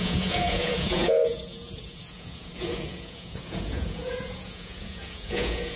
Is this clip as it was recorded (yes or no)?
no